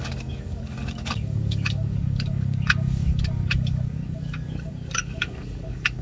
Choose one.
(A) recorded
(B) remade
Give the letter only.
B